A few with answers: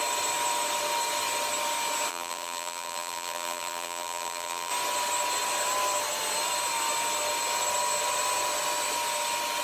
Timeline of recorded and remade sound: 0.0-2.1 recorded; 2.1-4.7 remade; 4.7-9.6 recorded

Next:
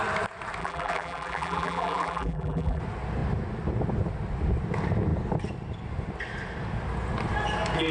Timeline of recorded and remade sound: 0.0-0.6 recorded; 0.6-2.8 remade; 2.8-7.9 recorded

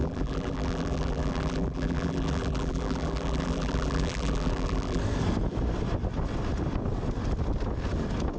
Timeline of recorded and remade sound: 0.0-5.0 remade; 5.0-8.4 recorded

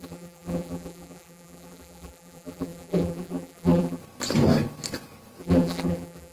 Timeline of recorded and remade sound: 0.0-4.0 remade; 4.0-5.4 recorded; 5.4-6.3 remade

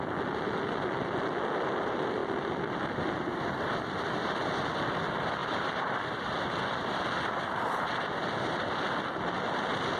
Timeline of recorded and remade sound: 0.0-5.4 recorded; 5.4-6.1 remade; 6.1-10.0 recorded

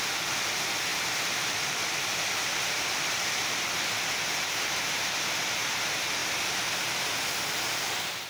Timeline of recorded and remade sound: 0.0-0.9 recorded; 0.9-5.3 remade; 5.3-8.3 recorded